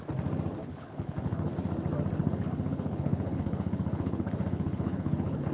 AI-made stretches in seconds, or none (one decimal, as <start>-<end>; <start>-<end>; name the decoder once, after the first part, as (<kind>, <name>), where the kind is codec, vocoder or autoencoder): 0.6-1.5 (codec, HILCodec); 2.2-5.5